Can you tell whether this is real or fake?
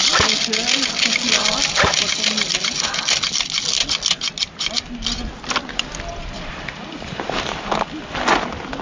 real